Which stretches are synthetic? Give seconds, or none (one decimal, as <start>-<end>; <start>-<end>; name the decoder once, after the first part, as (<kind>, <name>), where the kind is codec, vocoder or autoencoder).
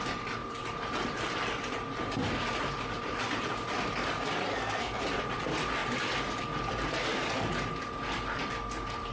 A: 4.5-5.0 (codec, SNAC)